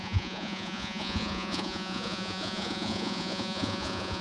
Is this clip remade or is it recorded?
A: remade